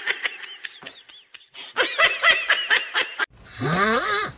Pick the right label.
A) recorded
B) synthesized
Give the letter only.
A